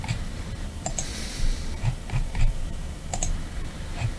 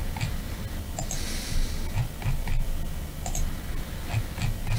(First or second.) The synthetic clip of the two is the first